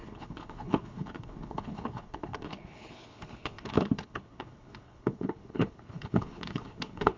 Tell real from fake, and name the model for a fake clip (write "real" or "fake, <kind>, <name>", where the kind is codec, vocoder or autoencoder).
fake, codec, HILCodec